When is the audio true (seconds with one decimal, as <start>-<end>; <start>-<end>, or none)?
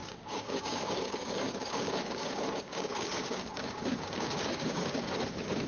none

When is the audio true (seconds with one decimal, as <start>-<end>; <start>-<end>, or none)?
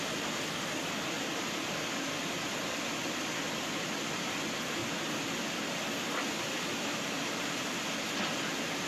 0.0-6.9; 7.8-8.9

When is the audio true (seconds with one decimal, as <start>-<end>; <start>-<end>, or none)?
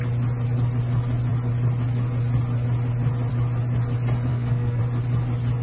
0.0-4.3; 4.8-5.6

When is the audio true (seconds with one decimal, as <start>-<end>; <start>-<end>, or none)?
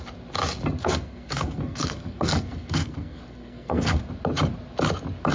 0.0-0.8; 4.0-5.3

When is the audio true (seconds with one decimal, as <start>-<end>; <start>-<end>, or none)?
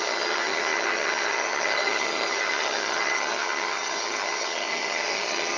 none